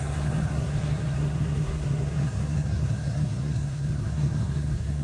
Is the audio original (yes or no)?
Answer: no